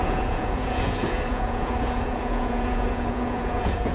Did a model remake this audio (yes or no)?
yes